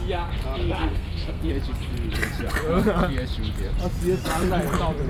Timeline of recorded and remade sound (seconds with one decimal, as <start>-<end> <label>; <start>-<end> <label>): 0.0-0.6 recorded; 0.6-1.5 remade; 1.5-5.1 recorded